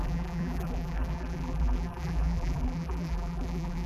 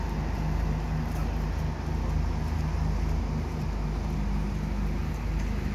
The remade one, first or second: first